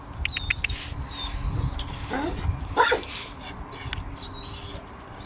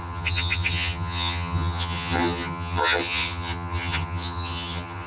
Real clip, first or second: first